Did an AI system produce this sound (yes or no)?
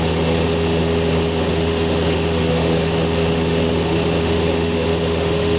yes